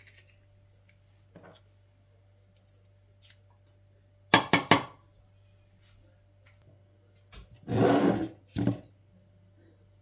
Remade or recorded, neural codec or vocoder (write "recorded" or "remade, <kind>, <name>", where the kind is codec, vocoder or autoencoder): recorded